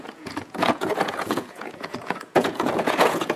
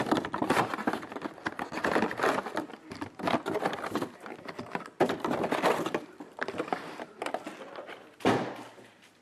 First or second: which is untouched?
second